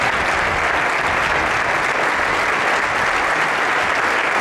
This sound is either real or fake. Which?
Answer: real